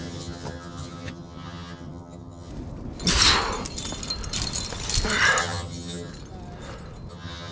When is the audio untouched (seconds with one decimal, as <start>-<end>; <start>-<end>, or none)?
2.5-5.4; 6.1-7.1